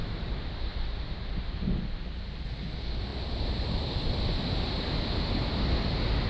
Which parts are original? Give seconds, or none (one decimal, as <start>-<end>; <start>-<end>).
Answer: 0.0-3.1; 5.3-6.3